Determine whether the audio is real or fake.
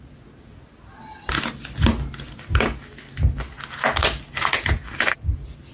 real